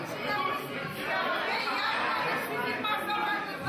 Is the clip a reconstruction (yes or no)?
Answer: no